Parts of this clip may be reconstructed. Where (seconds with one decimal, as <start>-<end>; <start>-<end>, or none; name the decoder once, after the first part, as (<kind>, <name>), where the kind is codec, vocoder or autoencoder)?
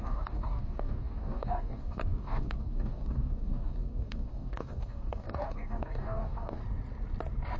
0.0-6.6 (codec, DAC)